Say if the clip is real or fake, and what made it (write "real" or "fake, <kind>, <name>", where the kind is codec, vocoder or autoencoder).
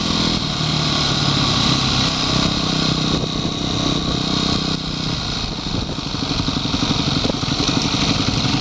real